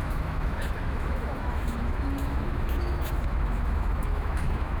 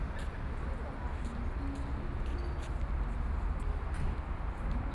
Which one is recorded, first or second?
second